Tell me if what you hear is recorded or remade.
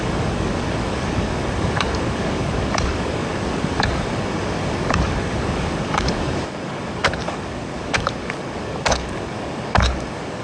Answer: remade